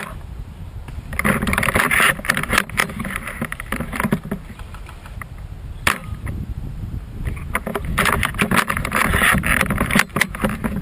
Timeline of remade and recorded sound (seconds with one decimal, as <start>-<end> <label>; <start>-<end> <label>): 0.0-2.8 recorded; 2.8-4.0 remade; 4.0-6.0 recorded; 6.0-7.3 remade; 7.3-10.8 recorded